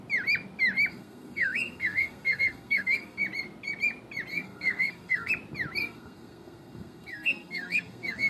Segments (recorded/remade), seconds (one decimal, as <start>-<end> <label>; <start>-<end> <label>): 0.0-0.9 recorded; 0.9-3.2 remade; 3.2-4.3 recorded; 4.3-5.3 remade; 5.3-5.8 recorded; 5.8-8.3 remade